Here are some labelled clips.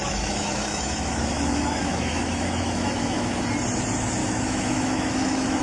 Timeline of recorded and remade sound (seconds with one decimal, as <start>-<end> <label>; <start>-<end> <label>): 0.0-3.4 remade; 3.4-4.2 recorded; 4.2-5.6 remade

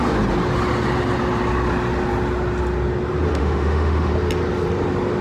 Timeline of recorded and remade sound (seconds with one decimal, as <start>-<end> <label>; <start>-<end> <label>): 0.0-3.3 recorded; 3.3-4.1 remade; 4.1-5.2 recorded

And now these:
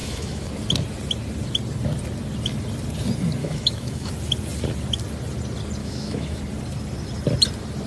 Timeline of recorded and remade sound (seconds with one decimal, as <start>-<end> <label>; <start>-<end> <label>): 0.0-0.5 remade; 0.5-3.4 recorded; 3.4-4.1 remade; 4.1-5.8 recorded; 5.8-6.4 remade; 6.4-7.9 recorded